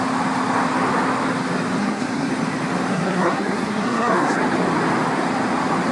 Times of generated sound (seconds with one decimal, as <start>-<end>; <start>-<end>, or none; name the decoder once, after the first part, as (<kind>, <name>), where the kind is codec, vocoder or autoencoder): 1.8-2.3 (codec, SNAC); 2.9-4.4